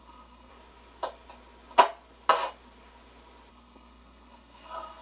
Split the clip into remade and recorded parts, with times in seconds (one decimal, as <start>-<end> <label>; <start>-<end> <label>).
0.0-0.5 remade; 0.5-3.5 recorded; 3.5-5.0 remade